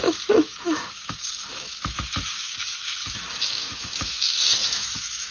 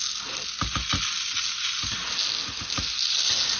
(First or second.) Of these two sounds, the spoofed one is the first